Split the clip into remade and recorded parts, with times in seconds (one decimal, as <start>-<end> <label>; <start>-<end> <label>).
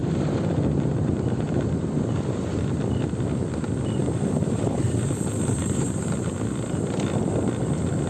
0.0-2.5 remade; 2.5-4.0 recorded; 4.0-6.3 remade; 6.3-8.1 recorded